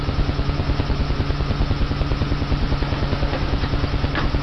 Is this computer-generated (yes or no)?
no